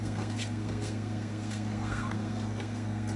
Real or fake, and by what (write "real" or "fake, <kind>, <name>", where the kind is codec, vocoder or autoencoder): fake, codec, SNAC